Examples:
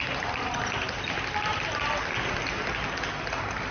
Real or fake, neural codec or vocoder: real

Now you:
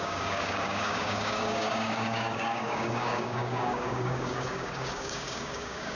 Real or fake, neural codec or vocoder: fake, codec, DAC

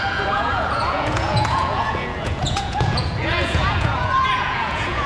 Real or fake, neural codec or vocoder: fake, vocoder, Vocos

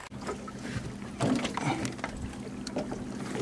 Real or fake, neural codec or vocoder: real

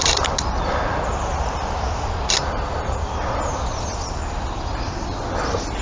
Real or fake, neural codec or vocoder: real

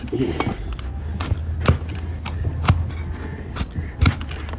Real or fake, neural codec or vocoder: real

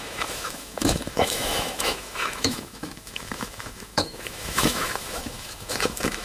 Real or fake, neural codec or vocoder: fake, autoencoder, DAC-VAE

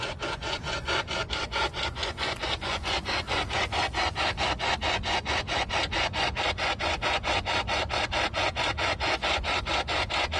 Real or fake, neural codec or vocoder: fake, vocoder, Vocos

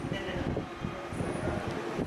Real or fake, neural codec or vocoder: real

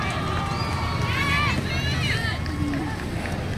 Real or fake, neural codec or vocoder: real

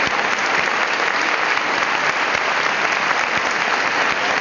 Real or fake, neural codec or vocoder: real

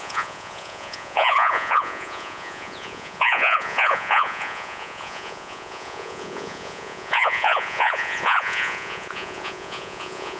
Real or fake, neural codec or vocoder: fake, vocoder, Vocos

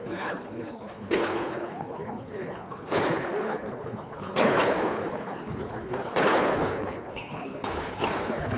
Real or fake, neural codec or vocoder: fake, codec, HILCodec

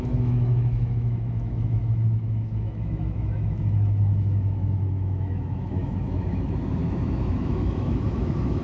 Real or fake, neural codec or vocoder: fake, autoencoder, DAC-VAE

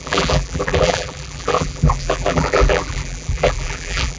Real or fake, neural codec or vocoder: fake, vocoder, BigVGAN v2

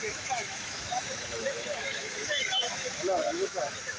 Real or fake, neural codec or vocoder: fake, autoencoder, DAC-VAE